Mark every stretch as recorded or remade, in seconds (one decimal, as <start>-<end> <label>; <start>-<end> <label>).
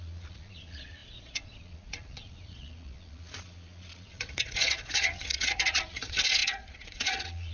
0.0-7.5 remade